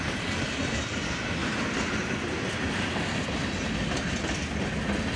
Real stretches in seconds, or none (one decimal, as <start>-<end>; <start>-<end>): 0.0-5.2

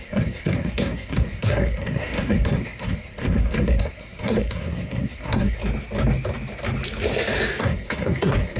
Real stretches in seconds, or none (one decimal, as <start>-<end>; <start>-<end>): 5.6-7.6

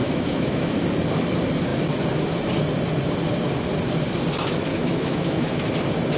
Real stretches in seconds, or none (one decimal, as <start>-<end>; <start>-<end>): 0.8-4.7; 5.7-6.2

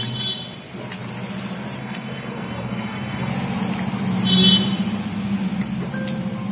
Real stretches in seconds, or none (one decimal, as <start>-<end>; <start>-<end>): 0.0-1.8; 3.3-6.5